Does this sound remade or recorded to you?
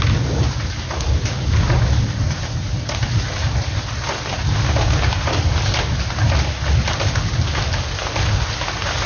recorded